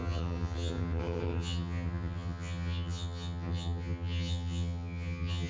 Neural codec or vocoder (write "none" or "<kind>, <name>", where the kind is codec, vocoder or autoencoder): vocoder, HiFi-GAN